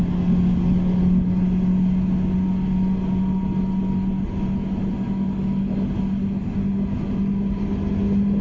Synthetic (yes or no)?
no